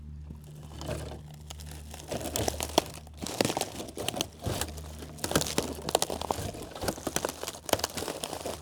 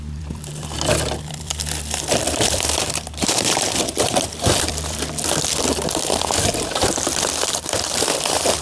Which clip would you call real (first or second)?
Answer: first